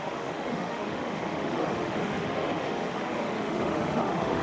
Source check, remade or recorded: remade